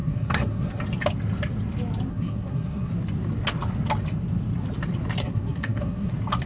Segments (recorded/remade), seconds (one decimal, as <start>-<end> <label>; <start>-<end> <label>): 0.0-0.8 remade; 0.8-2.1 recorded; 2.1-2.9 remade; 2.9-5.2 recorded; 5.2-6.1 remade; 6.1-6.5 recorded